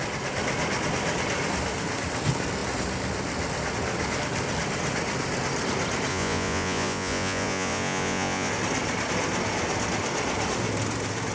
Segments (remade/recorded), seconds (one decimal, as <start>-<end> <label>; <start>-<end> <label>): 0.0-6.1 recorded; 6.1-8.5 remade; 8.5-11.3 recorded